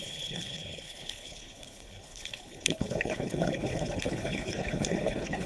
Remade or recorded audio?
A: remade